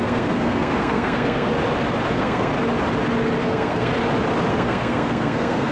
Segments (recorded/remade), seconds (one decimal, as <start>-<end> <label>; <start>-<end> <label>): 0.0-1.5 remade; 1.5-2.1 recorded; 2.1-2.5 remade; 2.5-3.4 recorded; 3.4-3.9 remade; 3.9-4.5 recorded; 4.5-5.7 remade